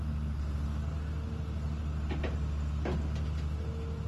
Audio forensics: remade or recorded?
recorded